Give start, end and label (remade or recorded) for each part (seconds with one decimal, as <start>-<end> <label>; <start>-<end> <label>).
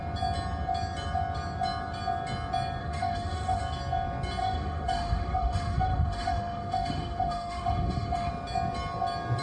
0.0-2.8 recorded; 2.8-3.6 remade; 3.6-4.4 recorded; 4.4-8.3 remade; 8.3-9.4 recorded